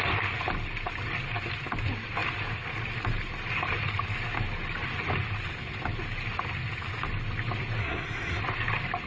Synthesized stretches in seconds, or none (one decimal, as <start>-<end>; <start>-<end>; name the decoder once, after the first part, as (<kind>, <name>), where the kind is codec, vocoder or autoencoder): 7.8-8.4 (codec, SNAC)